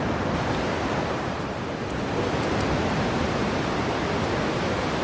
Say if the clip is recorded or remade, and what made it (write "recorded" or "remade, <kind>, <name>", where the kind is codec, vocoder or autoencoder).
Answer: recorded